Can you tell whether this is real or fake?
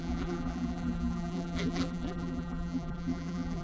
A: fake